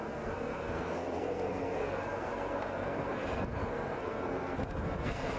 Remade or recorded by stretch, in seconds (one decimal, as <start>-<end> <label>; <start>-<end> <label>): 0.0-5.4 remade